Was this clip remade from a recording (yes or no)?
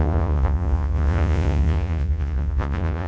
yes